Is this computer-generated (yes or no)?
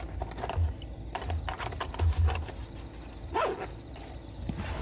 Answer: no